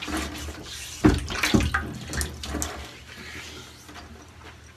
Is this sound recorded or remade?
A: recorded